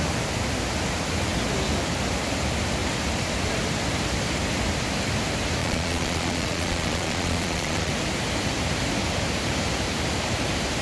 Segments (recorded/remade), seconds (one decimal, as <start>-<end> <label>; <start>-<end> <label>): 0.0-5.6 recorded; 5.6-7.9 remade; 7.9-10.8 recorded